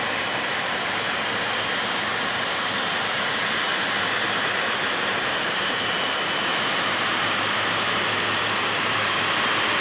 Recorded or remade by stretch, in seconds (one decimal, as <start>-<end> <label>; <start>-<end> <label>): 0.0-2.1 recorded; 2.1-2.9 remade; 2.9-6.5 recorded; 6.5-9.3 remade; 9.3-9.8 recorded

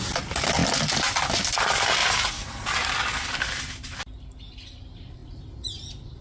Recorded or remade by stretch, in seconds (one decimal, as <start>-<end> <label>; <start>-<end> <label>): 0.0-0.6 remade; 0.6-1.3 recorded; 1.3-2.0 remade; 2.0-4.8 recorded; 4.8-6.2 remade

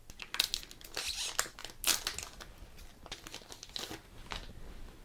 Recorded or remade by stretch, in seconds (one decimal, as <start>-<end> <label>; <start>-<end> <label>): 0.0-5.0 recorded

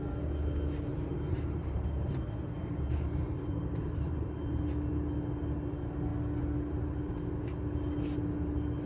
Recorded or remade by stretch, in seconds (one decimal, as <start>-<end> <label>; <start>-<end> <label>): 0.0-0.9 recorded; 0.9-4.6 remade; 4.6-8.8 recorded

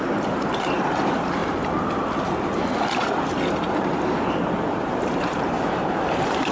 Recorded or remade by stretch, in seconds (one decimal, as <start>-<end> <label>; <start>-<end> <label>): 0.0-1.4 remade; 1.4-3.8 recorded; 3.8-6.5 remade

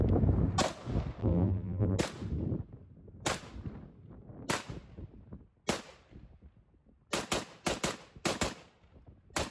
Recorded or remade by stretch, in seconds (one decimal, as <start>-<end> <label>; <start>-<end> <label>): 0.0-1.2 recorded; 1.2-2.0 remade; 2.0-9.5 recorded

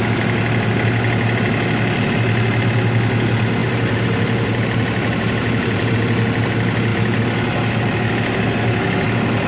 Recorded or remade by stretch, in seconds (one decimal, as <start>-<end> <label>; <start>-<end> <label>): 0.0-3.6 recorded; 3.6-6.0 remade; 6.0-9.5 recorded